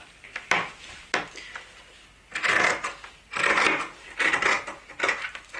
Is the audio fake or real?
real